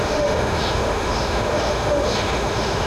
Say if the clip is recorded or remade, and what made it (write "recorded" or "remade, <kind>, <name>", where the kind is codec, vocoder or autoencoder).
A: remade, autoencoder, DAC-VAE